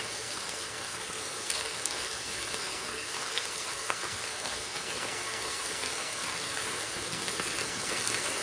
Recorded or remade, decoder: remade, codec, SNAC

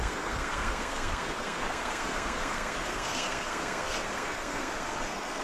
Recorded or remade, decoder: remade, codec, SNAC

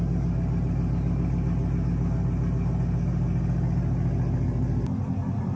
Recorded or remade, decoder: recorded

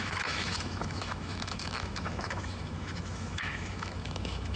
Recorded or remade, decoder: remade, autoencoder, DAC-VAE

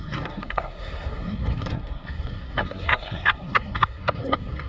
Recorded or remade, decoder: remade, codec, SNAC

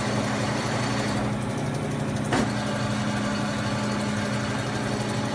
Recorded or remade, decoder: recorded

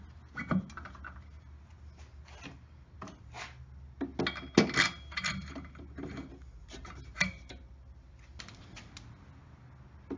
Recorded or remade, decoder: recorded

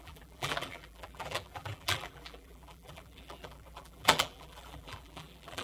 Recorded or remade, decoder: remade, vocoder, BigVGAN v2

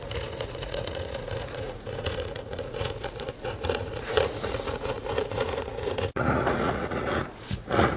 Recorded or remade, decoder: remade, vocoder, Vocos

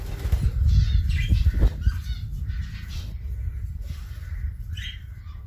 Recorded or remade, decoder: recorded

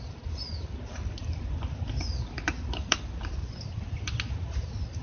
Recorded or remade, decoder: remade, vocoder, BigVGAN v2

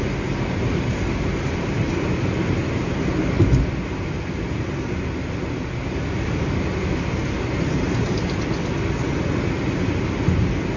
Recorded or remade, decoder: recorded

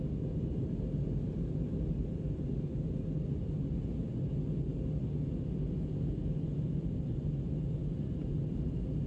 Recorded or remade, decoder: recorded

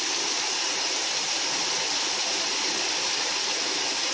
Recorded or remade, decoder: recorded